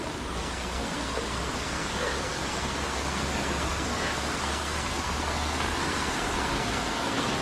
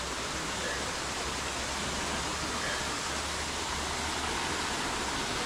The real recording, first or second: second